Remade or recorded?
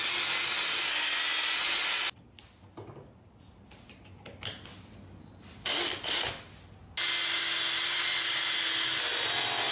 recorded